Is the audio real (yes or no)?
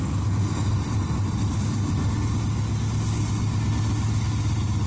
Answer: yes